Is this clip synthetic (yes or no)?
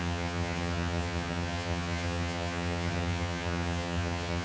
yes